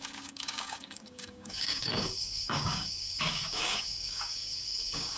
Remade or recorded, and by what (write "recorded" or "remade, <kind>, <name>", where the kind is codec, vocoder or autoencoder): remade, codec, DAC